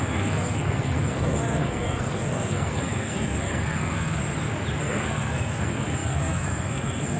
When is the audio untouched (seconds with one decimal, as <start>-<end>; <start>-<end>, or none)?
4.2-4.8